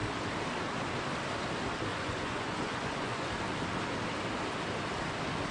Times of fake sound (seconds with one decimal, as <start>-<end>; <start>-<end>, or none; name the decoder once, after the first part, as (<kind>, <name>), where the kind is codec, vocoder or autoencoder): 1.9-3.3 (vocoder, Vocos)